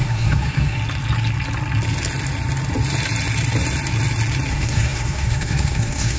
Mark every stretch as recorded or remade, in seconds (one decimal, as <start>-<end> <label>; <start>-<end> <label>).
0.0-0.8 remade; 0.8-4.5 recorded; 4.5-6.2 remade